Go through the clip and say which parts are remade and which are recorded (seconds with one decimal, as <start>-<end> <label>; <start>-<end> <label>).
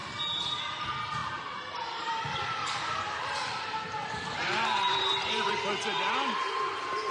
0.0-1.2 recorded; 1.2-5.5 remade; 5.5-7.1 recorded